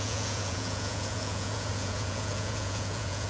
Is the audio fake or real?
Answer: fake